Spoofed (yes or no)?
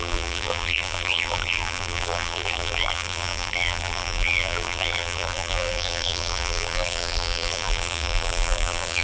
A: yes